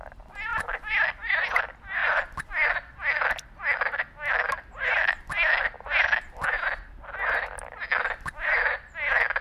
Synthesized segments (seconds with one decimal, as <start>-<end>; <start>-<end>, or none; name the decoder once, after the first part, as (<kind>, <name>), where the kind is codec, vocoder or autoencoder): 0.5-1.3 (vocoder, BigVGAN v2)